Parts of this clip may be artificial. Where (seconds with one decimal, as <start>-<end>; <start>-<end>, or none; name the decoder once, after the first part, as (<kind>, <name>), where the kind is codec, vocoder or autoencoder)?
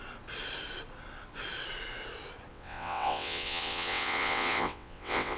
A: 2.5-5.4 (vocoder, WaveNeXt)